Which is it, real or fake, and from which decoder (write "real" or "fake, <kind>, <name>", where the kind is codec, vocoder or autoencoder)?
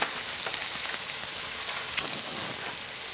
real